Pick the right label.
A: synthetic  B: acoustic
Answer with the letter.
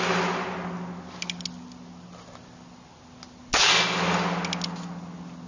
B